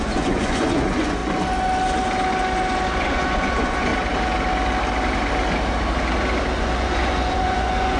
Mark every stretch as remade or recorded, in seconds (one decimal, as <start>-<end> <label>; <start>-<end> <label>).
0.0-1.2 remade; 1.2-3.0 recorded; 3.0-3.9 remade; 3.9-6.6 recorded; 6.6-8.0 remade